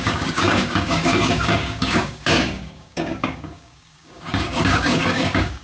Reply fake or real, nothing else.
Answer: fake